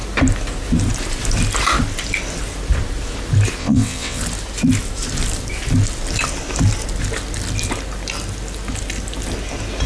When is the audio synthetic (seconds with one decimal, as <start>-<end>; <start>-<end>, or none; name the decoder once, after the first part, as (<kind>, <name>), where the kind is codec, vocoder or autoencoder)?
3.6-4.2 (vocoder, WaveNeXt)